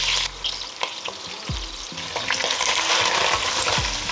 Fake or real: real